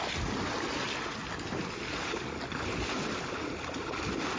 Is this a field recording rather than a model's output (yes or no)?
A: yes